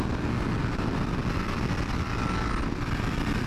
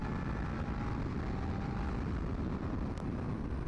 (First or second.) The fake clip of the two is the second